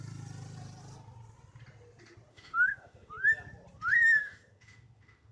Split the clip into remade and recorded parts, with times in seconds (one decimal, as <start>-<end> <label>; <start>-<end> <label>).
0.0-2.3 recorded; 2.3-3.1 remade; 3.1-4.2 recorded; 4.2-5.3 remade